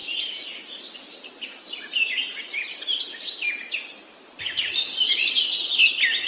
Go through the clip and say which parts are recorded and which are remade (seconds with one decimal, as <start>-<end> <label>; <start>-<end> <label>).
0.0-0.7 remade; 0.7-1.5 recorded; 1.5-4.7 remade; 4.7-6.3 recorded